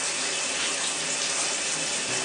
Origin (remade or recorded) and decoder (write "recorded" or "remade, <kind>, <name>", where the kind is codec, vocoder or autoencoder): recorded